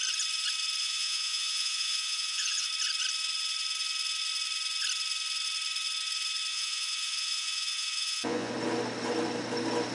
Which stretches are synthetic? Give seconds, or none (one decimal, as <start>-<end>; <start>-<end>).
0.8-2.7; 6.5-8.5